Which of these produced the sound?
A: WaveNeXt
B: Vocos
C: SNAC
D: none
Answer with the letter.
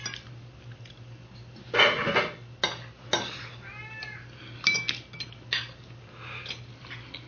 D